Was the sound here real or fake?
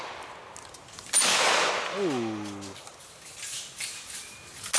real